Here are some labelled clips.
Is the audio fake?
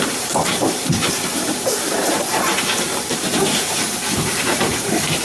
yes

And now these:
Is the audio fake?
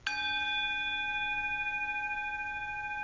no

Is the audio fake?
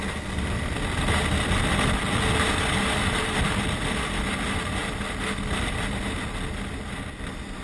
no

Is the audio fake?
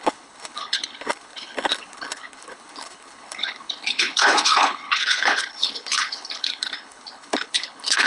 yes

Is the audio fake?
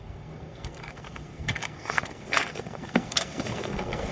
yes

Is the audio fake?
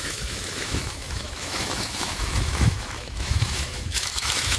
yes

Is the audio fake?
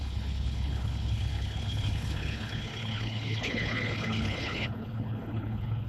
yes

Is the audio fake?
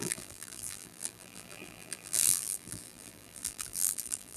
yes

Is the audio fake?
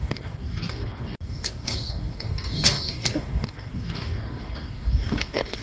yes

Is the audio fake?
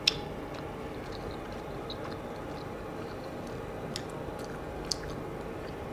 no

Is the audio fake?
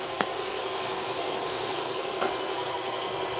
yes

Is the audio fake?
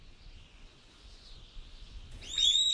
yes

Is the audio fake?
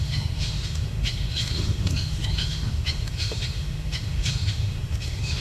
yes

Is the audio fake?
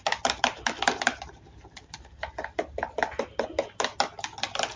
yes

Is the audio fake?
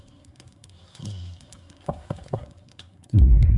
yes